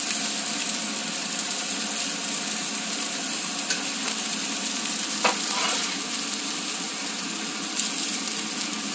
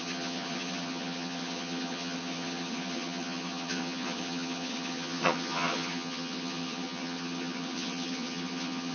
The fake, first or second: second